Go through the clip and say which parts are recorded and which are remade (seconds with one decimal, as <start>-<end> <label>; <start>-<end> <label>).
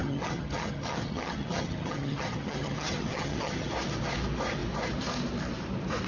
0.0-3.7 remade; 3.7-6.1 recorded